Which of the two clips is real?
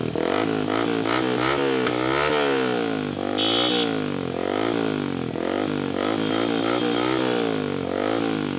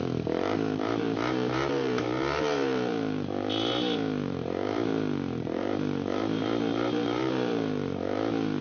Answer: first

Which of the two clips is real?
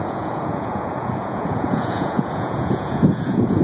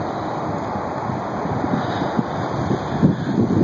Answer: second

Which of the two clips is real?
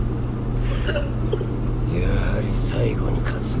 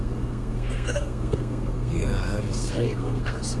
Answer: first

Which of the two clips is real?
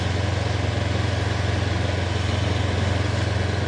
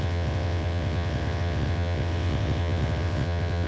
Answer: first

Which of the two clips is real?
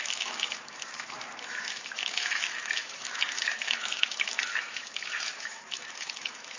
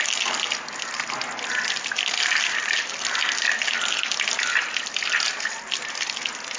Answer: second